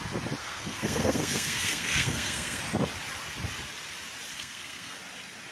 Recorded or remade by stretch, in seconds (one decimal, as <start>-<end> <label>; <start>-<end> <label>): 0.0-0.4 recorded; 0.4-2.6 remade; 2.6-4.3 recorded; 4.3-5.0 remade; 5.0-5.5 recorded